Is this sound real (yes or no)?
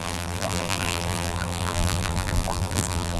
no